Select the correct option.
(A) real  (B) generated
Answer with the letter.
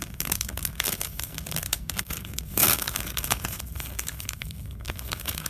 B